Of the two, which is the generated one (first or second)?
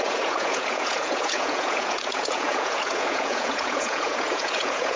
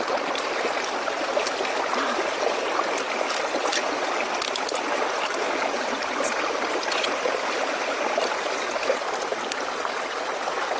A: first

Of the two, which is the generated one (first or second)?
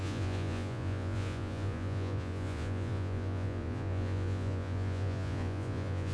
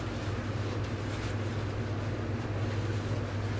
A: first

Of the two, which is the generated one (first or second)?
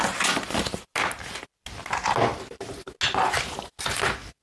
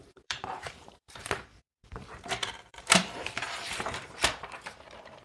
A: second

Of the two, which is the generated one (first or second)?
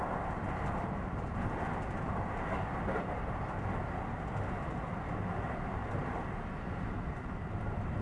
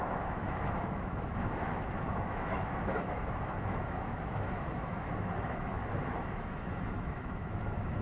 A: second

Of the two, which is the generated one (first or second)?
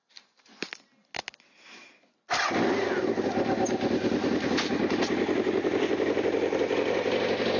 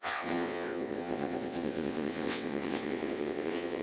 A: second